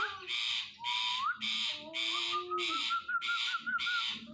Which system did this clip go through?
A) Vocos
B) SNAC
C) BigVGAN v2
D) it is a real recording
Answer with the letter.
D